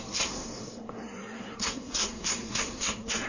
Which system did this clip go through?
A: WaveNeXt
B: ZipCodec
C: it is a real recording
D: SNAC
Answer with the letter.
D